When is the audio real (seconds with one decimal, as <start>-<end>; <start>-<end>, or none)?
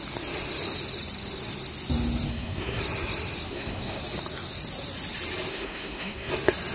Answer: 0.0-2.3; 2.8-3.5; 4.0-5.5; 6.3-6.7